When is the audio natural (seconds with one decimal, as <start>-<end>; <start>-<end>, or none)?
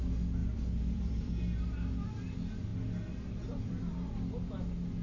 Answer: 0.0-0.4; 1.3-2.7; 3.9-5.0